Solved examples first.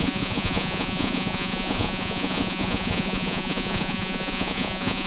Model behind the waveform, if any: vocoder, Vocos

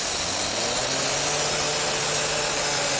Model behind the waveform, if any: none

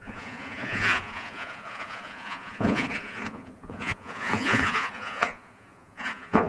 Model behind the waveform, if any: vocoder, Vocos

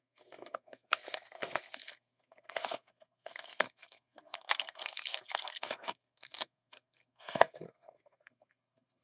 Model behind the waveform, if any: codec, SNAC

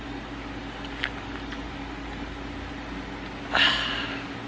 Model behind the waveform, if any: none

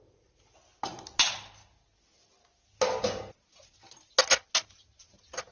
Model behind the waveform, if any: none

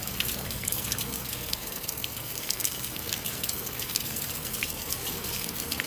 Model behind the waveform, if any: codec, SNAC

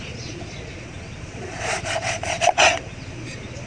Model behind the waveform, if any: vocoder, Vocos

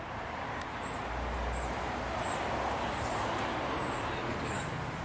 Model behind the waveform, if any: none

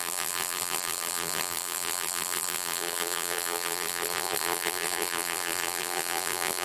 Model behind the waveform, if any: vocoder, BigVGAN v2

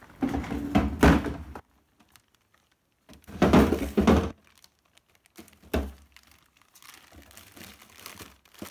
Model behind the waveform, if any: none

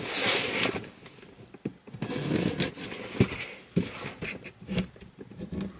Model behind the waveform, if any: none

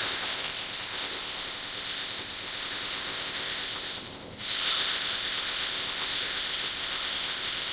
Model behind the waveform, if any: codec, ZipCodec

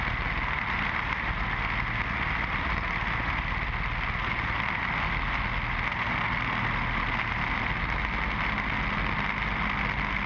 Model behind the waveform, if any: none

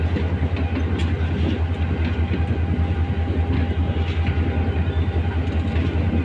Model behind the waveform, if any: none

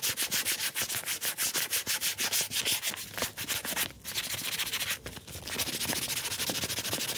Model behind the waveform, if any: none